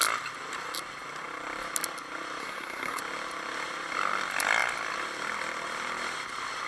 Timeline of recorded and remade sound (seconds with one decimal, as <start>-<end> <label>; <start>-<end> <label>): 0.0-2.4 recorded; 2.4-3.0 remade; 3.0-6.7 recorded